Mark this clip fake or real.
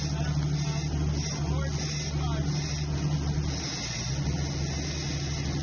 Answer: real